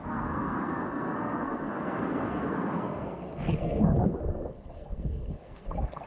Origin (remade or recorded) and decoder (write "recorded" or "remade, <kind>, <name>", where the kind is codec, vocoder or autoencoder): remade, codec, SNAC